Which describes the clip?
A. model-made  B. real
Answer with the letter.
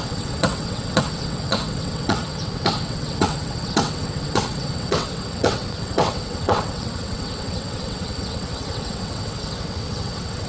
A